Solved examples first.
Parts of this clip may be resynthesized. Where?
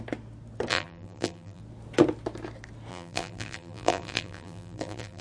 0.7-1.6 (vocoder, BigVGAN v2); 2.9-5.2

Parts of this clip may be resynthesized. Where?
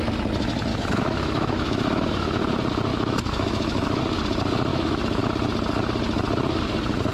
0.7-2.4 (autoencoder, DAC-VAE); 2.9-4.0; 4.7-5.2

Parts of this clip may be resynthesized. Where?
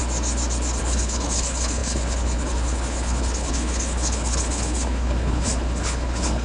0.8-6.4 (codec, HILCodec)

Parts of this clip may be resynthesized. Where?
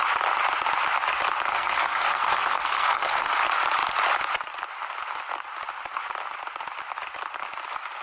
1.5-3.3 (codec, SNAC)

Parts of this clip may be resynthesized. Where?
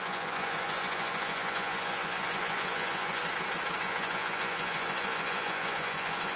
0.0-3.2 (vocoder, Vocos); 3.8-6.4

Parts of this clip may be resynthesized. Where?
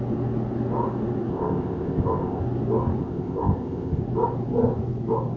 1.3-2.4 (codec, ZipCodec); 3.0-4.0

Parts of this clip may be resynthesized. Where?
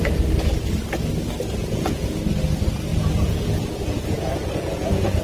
1.6-2.2 (vocoder, Vocos); 2.9-5.2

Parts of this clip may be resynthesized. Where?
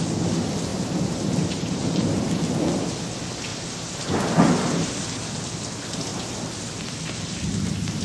0.7-2.2 (vocoder, BigVGAN v2); 3.5-4.9